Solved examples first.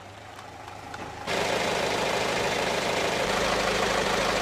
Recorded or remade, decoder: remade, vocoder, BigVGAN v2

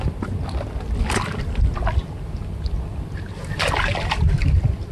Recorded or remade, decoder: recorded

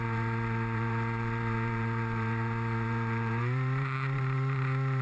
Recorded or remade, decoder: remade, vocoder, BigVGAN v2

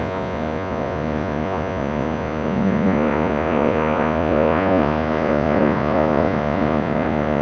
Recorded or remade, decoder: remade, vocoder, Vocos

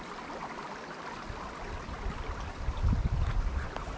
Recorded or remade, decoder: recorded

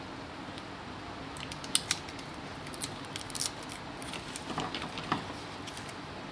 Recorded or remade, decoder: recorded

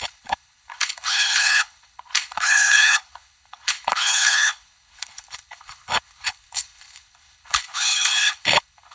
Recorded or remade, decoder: remade, codec, HILCodec